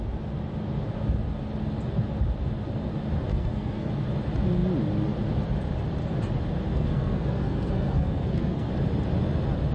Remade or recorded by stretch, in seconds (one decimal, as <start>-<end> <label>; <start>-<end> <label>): 0.0-3.3 recorded; 3.3-3.9 remade; 3.9-6.7 recorded; 6.7-8.7 remade; 8.7-9.7 recorded